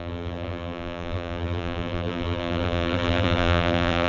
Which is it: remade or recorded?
remade